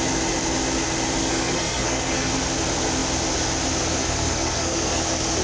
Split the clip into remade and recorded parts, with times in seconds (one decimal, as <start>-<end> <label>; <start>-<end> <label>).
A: 0.0-1.2 recorded; 1.2-2.3 remade; 2.3-4.0 recorded; 4.0-5.0 remade; 5.0-5.4 recorded